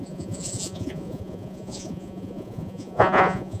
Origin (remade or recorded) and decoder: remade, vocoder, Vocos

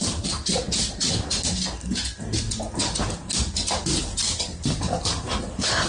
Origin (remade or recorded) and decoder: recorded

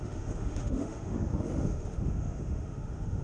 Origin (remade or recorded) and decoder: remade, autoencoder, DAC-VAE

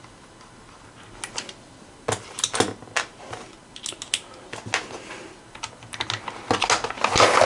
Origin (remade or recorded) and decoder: recorded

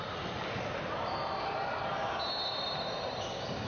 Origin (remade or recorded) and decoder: recorded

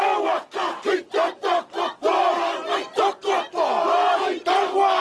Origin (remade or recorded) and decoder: recorded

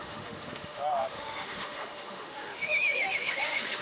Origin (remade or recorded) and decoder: remade, autoencoder, DAC-VAE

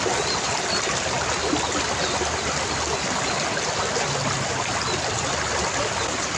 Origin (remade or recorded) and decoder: recorded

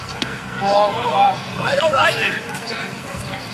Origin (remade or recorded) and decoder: remade, codec, SNAC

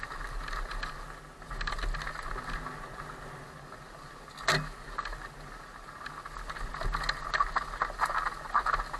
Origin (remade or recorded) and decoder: recorded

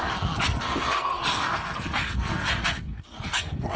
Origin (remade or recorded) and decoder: remade, codec, SNAC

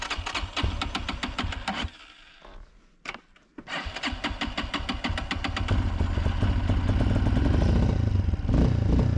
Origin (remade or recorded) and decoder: recorded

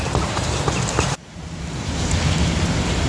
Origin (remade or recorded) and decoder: recorded